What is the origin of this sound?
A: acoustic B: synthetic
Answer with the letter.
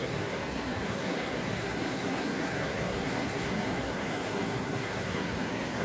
B